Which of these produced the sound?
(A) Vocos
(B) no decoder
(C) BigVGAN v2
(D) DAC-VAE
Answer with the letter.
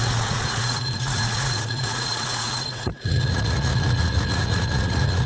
A